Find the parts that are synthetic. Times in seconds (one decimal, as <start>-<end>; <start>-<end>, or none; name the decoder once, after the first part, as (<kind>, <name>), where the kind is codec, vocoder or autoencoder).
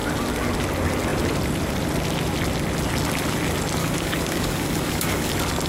3.8-5.3 (codec, DAC)